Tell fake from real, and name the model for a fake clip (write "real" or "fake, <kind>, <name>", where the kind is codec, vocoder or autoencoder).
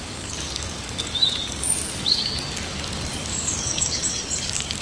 fake, codec, DAC